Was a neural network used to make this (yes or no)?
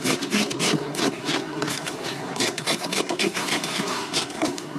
yes